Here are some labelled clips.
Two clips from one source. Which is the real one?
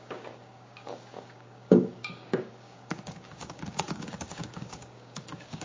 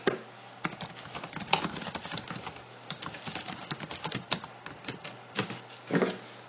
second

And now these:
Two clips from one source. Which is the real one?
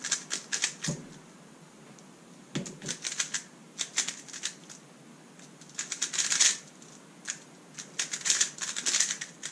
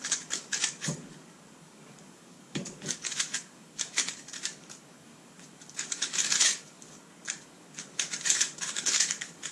first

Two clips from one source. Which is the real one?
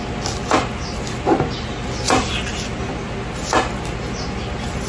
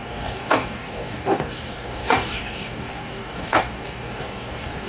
first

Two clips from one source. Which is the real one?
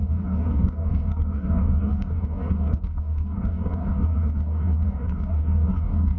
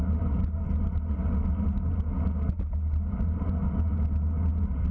second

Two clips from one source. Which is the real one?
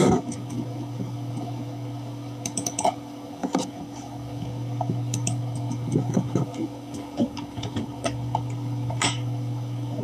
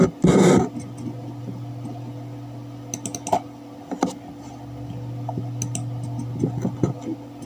second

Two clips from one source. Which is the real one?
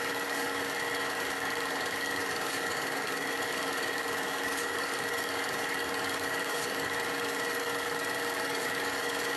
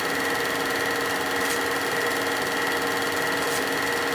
second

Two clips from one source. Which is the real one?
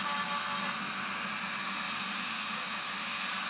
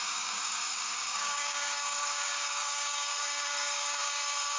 first